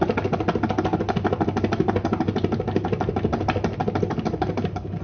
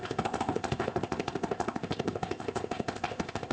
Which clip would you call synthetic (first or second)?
second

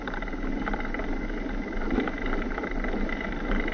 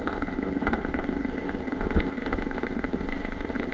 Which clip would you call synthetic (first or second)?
second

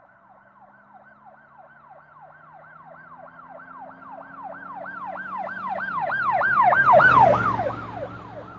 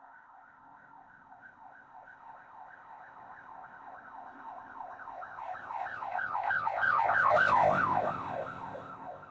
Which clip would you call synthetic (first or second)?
second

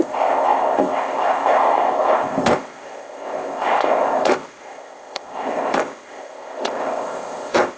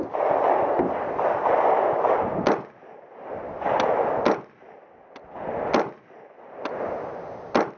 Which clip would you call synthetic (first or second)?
first